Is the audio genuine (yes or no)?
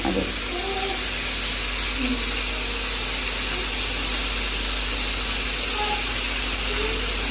yes